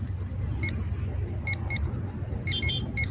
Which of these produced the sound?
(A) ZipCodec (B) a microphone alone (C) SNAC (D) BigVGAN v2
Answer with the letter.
B